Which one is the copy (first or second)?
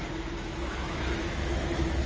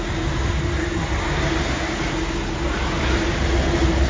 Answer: first